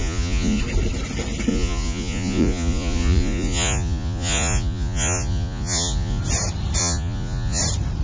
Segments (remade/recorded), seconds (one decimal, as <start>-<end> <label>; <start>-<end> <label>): 0.0-0.6 remade; 0.6-1.5 recorded; 1.5-6.2 remade; 6.2-6.8 recorded; 6.8-7.6 remade; 7.6-8.0 recorded